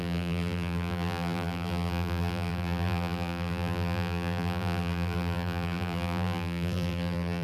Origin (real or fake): fake